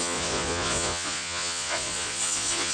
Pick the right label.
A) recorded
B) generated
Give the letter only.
B